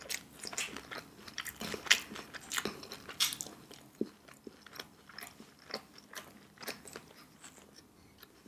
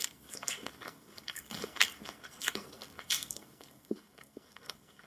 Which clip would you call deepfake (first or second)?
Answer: second